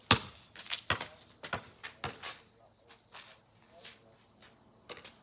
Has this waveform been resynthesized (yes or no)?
no